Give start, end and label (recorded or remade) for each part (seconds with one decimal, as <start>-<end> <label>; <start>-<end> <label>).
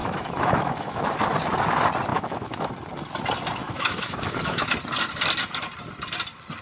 0.0-1.2 remade; 1.2-2.1 recorded; 2.1-2.7 remade; 2.7-3.6 recorded; 3.6-4.7 remade; 4.7-6.6 recorded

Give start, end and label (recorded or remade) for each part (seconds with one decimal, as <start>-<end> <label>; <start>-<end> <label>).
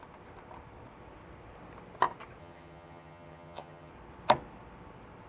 0.0-2.4 recorded; 2.4-3.9 remade; 3.9-5.3 recorded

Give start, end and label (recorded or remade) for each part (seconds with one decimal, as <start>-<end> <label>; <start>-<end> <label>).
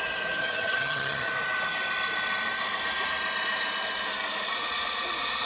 0.0-0.4 recorded; 0.4-1.3 remade; 1.3-5.5 recorded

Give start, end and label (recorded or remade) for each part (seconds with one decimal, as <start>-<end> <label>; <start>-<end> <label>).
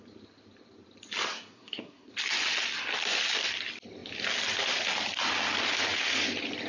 0.0-1.3 recorded; 1.3-2.1 remade; 2.1-6.7 recorded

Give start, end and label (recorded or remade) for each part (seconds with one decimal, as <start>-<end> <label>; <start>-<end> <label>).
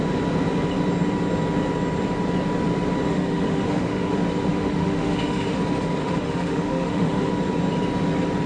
0.0-3.1 recorded; 3.1-4.1 remade; 4.1-4.5 recorded; 4.5-5.6 remade; 5.6-6.0 recorded; 6.0-7.3 remade; 7.3-8.5 recorded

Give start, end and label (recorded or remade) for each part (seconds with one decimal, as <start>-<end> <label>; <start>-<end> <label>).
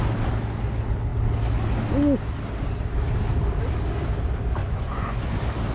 0.0-4.6 recorded; 4.6-5.2 remade; 5.2-5.7 recorded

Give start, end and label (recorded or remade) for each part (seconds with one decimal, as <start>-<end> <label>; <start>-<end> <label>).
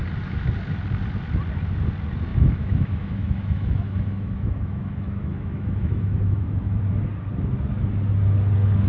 0.0-2.3 recorded; 2.3-6.8 remade; 6.8-8.9 recorded